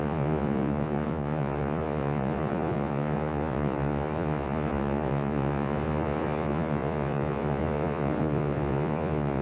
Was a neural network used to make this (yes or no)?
yes